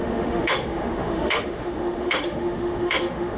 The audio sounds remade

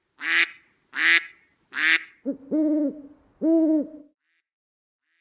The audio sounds recorded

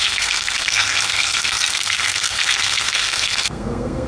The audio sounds remade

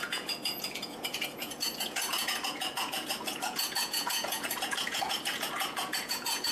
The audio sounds remade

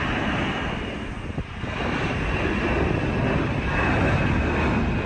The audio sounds recorded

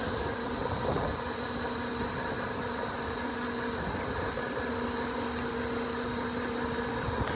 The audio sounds recorded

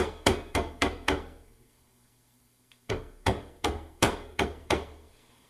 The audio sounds remade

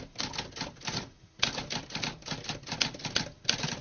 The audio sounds recorded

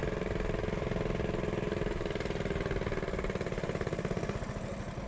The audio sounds recorded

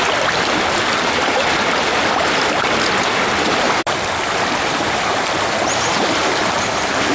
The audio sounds recorded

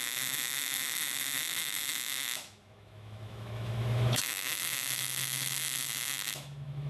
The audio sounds remade